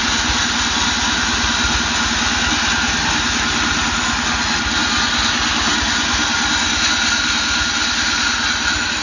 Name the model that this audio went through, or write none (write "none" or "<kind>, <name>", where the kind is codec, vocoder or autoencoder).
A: none